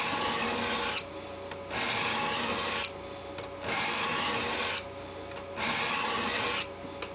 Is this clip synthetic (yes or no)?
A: no